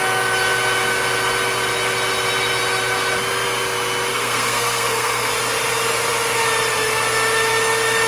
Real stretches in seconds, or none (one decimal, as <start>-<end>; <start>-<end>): 0.0-4.1; 5.3-8.1